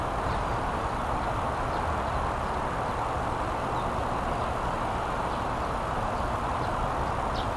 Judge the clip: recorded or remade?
recorded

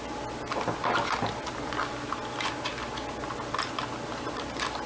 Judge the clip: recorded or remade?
recorded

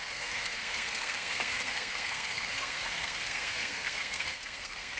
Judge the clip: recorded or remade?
remade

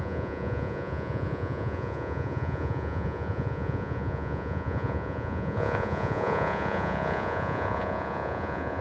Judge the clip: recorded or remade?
remade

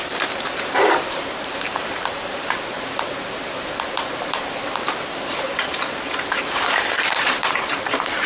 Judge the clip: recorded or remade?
remade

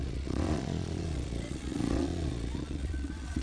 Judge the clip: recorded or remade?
remade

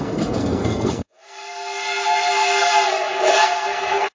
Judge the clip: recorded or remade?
remade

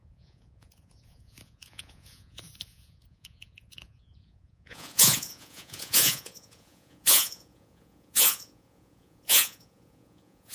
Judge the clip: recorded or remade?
remade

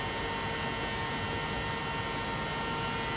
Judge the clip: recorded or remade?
recorded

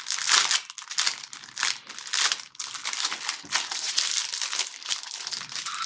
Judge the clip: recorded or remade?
recorded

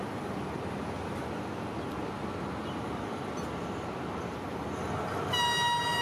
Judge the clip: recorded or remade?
recorded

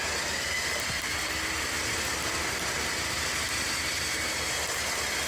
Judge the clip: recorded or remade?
recorded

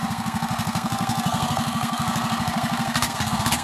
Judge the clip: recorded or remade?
remade